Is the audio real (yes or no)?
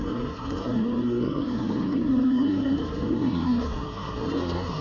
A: no